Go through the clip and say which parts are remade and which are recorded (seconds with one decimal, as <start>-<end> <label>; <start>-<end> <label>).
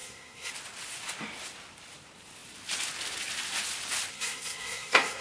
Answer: 0.0-0.5 remade; 0.5-4.1 recorded; 4.1-5.2 remade